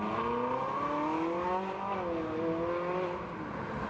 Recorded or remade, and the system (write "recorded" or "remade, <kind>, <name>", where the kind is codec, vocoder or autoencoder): recorded